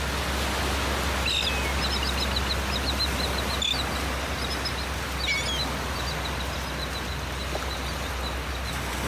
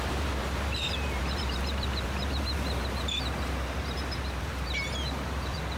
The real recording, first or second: first